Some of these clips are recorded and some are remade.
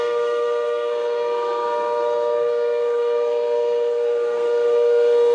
remade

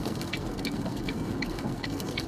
remade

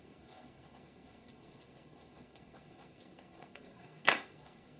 remade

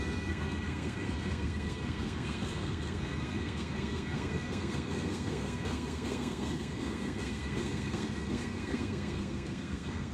remade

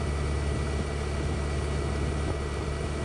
recorded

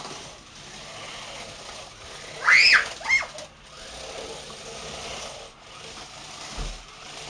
recorded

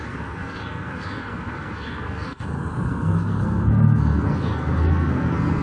remade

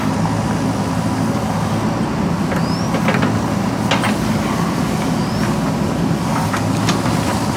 recorded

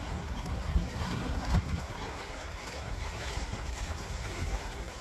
remade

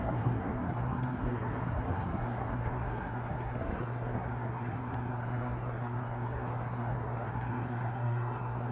remade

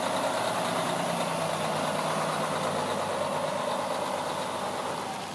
recorded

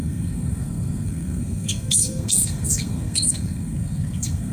remade